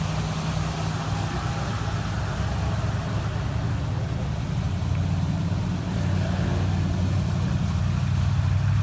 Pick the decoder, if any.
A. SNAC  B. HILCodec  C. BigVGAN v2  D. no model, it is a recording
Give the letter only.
D